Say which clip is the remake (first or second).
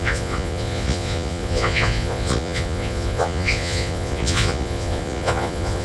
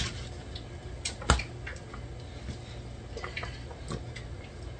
first